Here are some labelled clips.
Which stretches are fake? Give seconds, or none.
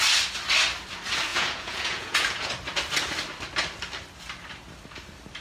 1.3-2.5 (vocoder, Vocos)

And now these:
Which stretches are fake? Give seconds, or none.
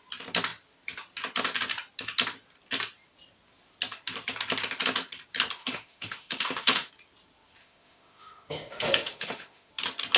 5.6-6.9 (autoencoder, DAC-VAE); 7.6-9.7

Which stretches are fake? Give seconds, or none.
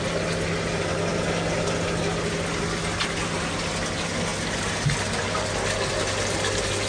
none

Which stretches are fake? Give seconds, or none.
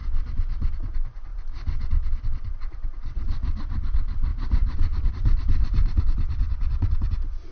0.0-7.5 (vocoder, Vocos)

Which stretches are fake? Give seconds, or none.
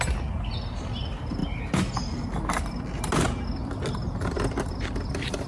none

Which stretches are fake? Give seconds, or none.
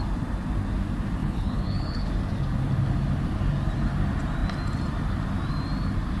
1.2-2.1 (codec, HILCodec)